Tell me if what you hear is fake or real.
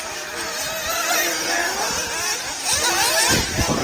real